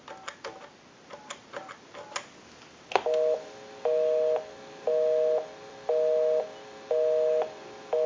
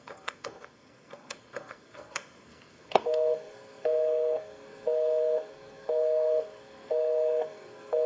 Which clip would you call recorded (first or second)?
first